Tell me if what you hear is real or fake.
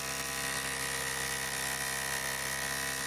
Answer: real